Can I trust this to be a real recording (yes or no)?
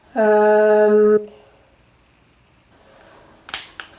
yes